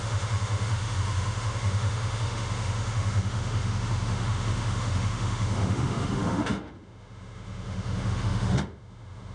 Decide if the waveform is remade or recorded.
remade